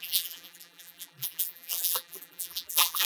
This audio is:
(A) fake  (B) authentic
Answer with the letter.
A